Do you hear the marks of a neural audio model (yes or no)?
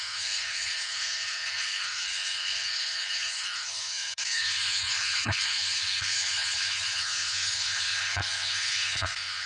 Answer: yes